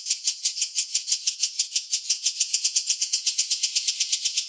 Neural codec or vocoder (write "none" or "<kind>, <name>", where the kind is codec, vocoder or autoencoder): vocoder, Vocos